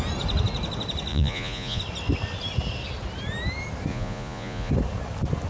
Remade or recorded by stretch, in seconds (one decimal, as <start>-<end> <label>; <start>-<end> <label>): 0.0-1.1 recorded; 1.1-1.8 remade; 1.8-3.9 recorded; 3.9-4.7 remade; 4.7-5.5 recorded